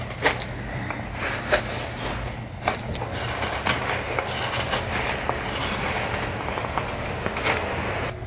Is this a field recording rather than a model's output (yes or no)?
yes